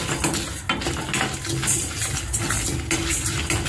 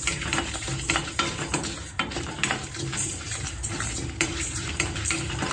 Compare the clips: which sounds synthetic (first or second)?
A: second